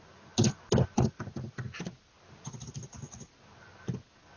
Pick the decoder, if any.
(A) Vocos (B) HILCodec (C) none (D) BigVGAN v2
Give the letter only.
C